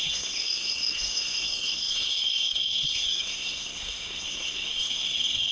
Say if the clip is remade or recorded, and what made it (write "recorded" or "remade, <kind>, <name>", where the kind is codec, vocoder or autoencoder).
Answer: remade, codec, SNAC